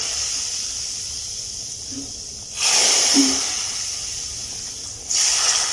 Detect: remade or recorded remade